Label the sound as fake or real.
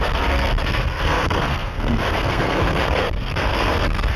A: fake